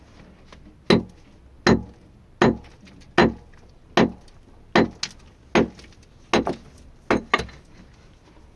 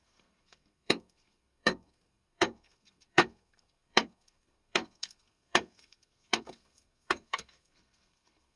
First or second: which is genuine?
first